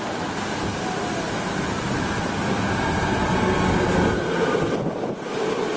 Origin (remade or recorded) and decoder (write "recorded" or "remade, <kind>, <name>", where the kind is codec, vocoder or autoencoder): recorded